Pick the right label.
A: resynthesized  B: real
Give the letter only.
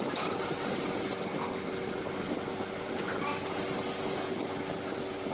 B